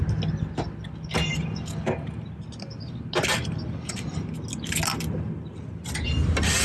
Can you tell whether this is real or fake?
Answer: real